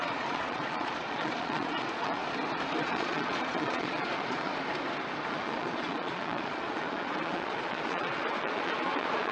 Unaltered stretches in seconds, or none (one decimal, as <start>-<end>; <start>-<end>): 2.2-2.8; 4.5-5.3

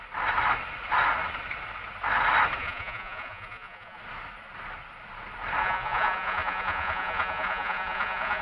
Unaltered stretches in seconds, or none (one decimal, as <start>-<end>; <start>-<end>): 0.0-2.6; 4.0-5.6

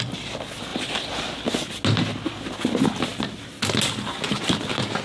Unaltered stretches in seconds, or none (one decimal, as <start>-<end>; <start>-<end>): 0.0-5.0

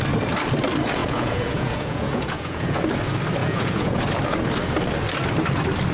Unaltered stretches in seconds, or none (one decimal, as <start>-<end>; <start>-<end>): 0.0-1.0; 2.8-3.4; 4.0-5.9

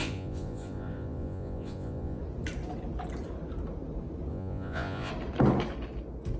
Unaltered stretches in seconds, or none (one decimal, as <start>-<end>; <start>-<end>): 2.2-4.3; 5.1-6.4

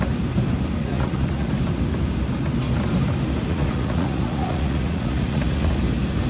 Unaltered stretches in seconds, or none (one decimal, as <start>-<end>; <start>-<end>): 0.0-0.8; 1.5-3.5; 5.7-6.3

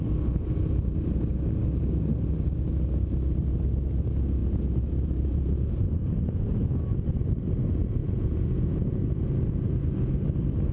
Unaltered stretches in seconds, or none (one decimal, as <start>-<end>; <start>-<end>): 0.0-4.4; 6.8-8.0; 9.3-10.7

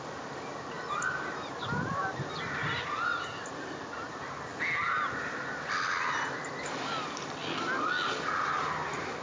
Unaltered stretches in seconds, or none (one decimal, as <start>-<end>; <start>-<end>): 0.0-9.2